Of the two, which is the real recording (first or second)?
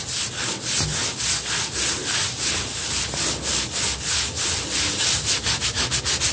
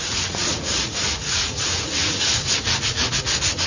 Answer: first